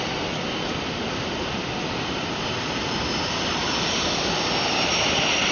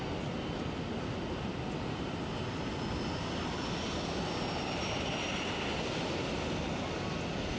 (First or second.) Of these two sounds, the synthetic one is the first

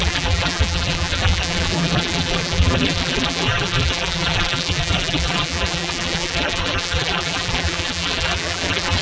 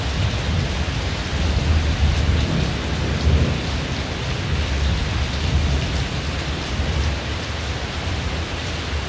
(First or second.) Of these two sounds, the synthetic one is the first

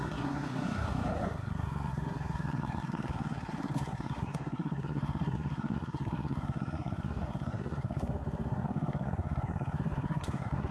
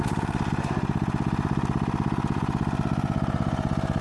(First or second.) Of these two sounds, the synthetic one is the first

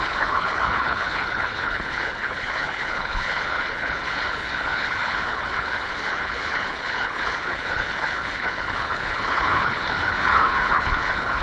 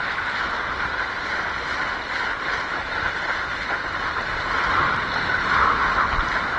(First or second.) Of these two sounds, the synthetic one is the first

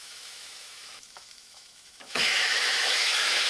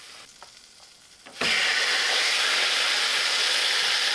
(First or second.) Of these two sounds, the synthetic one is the first